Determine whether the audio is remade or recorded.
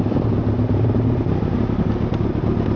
recorded